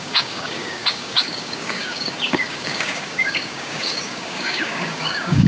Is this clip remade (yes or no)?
yes